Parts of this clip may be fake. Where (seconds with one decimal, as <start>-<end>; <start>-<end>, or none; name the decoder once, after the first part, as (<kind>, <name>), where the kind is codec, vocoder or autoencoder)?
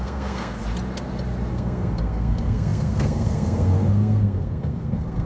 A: 0.0-0.6 (codec, SNAC); 1.5-5.3